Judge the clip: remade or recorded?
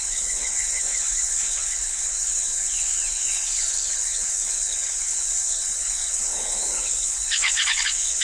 remade